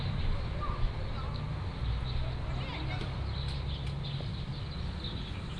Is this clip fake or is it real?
real